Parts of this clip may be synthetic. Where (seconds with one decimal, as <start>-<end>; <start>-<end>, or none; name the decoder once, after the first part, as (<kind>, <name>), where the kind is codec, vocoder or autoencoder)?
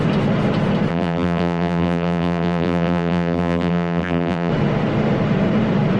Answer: 0.9-4.5 (vocoder, BigVGAN v2)